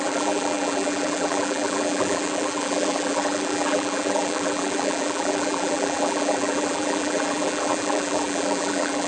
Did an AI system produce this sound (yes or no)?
yes